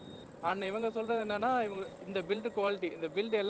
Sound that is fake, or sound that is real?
fake